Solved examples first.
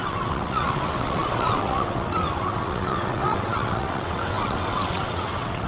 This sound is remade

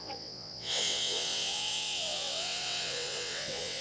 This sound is remade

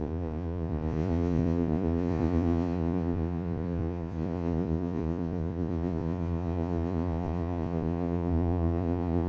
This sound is remade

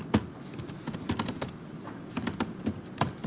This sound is recorded